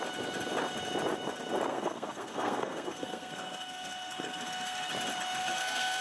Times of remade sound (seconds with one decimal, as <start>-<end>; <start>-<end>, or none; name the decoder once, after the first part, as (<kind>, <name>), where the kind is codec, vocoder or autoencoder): 1.7-4.9 (codec, SNAC); 5.4-6.0